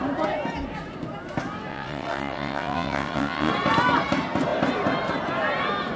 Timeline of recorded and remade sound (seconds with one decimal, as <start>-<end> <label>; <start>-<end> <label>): 0.0-1.7 recorded; 1.7-3.5 remade; 3.5-6.0 recorded